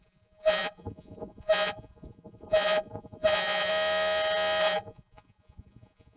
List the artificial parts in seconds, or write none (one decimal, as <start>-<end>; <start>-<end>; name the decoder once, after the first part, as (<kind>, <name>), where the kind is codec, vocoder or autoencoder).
0.0-3.7 (vocoder, Vocos); 4.6-6.2